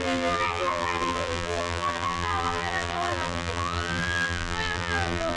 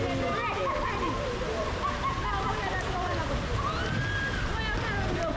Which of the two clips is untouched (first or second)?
second